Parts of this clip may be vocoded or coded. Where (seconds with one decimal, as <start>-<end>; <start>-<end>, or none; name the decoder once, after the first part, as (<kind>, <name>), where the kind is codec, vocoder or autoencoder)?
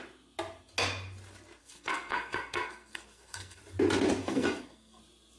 1.6-3.6 (codec, SNAC); 4.2-5.0